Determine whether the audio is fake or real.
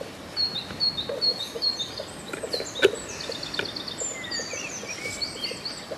real